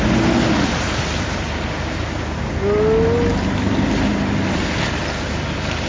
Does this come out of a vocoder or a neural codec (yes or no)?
no